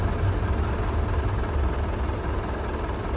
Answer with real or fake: real